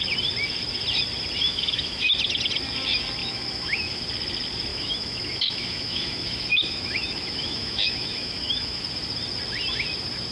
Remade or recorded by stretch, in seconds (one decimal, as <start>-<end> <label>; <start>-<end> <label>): 0.0-1.4 recorded; 1.4-2.0 remade; 2.0-3.2 recorded; 3.2-4.0 remade; 4.0-4.7 recorded; 4.7-8.8 remade; 8.8-10.3 recorded